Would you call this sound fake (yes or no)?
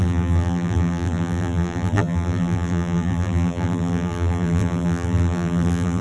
yes